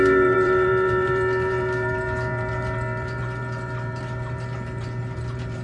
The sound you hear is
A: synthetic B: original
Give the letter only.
A